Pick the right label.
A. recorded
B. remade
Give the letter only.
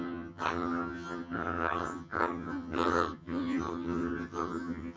B